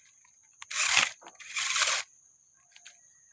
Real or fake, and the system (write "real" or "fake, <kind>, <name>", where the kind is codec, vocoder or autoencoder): real